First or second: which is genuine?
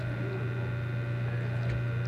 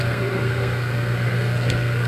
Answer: first